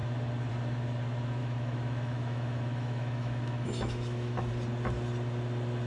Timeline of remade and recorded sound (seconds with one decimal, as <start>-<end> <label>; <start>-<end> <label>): 0.0-1.4 recorded; 1.4-4.5 remade; 4.5-5.9 recorded